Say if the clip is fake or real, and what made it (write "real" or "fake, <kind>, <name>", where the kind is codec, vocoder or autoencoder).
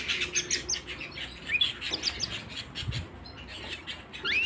real